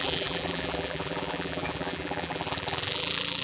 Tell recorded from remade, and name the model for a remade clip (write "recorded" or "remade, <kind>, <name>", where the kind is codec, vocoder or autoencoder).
remade, vocoder, BigVGAN v2